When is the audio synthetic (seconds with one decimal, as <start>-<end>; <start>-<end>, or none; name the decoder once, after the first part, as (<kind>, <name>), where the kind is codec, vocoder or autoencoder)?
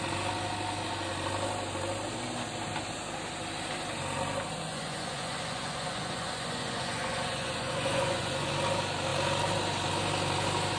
4.7-8.5 (vocoder, Vocos)